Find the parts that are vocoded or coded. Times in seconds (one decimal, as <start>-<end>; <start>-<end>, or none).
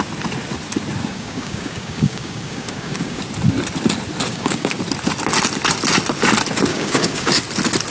1.1-3.2; 4.3-4.8; 6.7-7.3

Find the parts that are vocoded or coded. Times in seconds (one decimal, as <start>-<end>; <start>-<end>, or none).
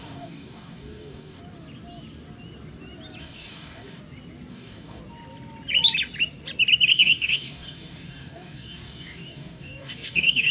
0.0-1.4; 3.2-4.0; 4.5-5.0; 6.9-10.5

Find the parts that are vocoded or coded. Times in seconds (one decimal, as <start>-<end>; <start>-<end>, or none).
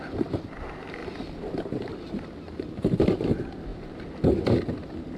none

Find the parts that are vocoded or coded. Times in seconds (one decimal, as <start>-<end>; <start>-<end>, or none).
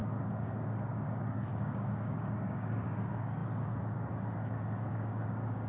0.0-5.7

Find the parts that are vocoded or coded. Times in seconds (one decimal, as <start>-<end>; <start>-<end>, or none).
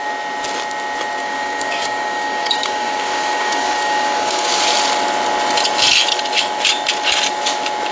1.2-4.6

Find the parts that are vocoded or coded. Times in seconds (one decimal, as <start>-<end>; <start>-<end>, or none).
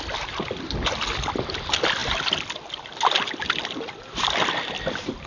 none